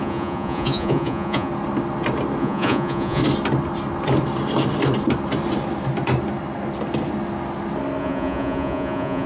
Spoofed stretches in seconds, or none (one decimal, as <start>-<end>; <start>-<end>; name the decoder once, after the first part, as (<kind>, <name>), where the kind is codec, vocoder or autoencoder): 0.0-1.5 (vocoder, Vocos); 2.4-3.2; 8.0-9.3